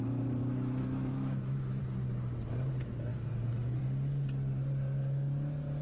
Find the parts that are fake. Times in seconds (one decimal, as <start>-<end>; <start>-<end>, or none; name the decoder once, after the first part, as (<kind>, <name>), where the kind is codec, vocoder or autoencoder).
0.4-1.8 (autoencoder, DAC-VAE)